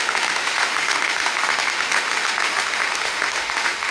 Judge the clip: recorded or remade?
remade